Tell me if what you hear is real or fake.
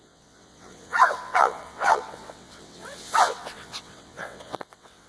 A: fake